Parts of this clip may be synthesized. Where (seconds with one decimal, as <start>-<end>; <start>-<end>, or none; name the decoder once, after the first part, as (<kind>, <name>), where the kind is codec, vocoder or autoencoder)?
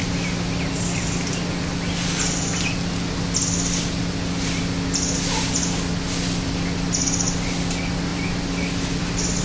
none